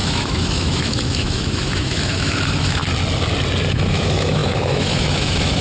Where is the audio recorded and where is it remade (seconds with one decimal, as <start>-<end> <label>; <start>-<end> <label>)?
0.0-2.8 remade; 2.8-3.7 recorded; 3.7-5.6 remade